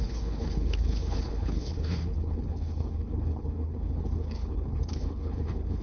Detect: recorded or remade remade